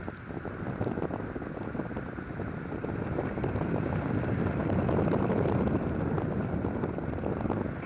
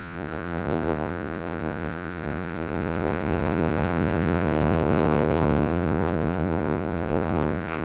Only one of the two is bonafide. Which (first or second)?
first